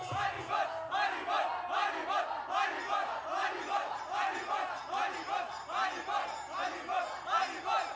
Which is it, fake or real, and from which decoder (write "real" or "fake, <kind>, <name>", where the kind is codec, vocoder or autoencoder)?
real